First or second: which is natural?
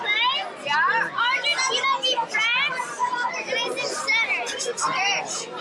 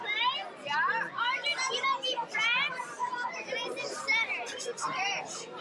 first